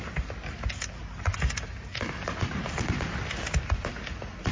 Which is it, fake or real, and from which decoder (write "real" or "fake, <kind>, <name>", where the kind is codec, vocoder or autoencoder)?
real